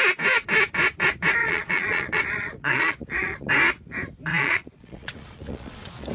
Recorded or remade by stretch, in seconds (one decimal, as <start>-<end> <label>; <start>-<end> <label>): 0.0-1.4 recorded; 1.4-3.5 remade; 3.5-4.3 recorded; 4.3-6.1 remade